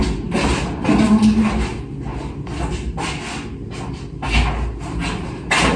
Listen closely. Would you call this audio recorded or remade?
recorded